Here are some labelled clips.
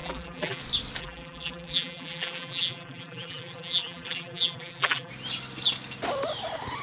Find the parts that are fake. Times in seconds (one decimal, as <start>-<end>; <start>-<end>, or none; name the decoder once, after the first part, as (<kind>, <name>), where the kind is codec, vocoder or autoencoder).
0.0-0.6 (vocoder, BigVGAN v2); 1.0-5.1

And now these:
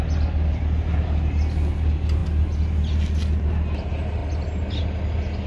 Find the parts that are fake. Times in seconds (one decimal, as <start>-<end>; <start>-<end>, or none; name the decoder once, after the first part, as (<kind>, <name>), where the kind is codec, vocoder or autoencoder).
none

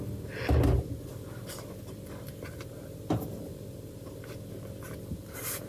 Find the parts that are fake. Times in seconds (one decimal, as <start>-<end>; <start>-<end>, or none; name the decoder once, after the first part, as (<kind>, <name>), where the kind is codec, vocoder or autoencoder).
1.1-4.4 (vocoder, BigVGAN v2)

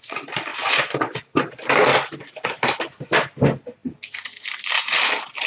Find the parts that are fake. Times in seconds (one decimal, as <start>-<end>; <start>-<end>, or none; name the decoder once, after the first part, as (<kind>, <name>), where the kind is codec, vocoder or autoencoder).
0.5-1.5 (vocoder, BigVGAN v2); 1.9-2.8

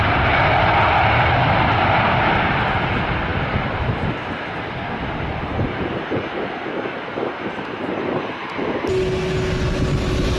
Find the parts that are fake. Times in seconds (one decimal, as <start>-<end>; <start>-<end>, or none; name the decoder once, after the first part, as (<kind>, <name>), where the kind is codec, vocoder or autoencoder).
8.4-8.9 (vocoder, BigVGAN v2)

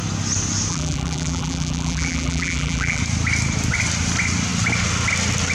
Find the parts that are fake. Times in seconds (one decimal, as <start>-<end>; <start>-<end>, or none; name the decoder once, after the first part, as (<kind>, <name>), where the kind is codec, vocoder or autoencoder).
0.7-3.0 (vocoder, BigVGAN v2)

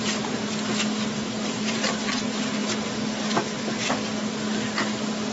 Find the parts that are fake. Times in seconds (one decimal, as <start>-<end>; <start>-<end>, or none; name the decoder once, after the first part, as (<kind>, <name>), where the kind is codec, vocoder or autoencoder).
1.2-1.9 (vocoder, BigVGAN v2)